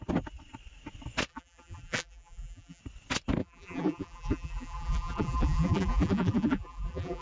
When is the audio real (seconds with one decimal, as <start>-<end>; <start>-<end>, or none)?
0.0-1.3; 2.8-3.4